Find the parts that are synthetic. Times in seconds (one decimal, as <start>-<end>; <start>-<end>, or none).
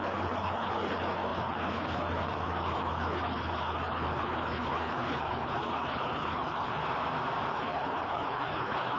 0.0-6.8; 7.5-9.0